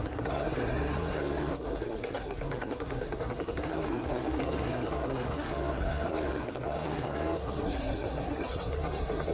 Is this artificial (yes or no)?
yes